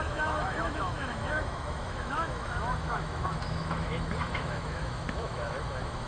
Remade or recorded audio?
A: remade